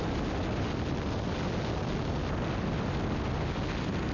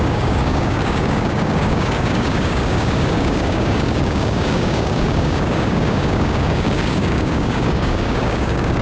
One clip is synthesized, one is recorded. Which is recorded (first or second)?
first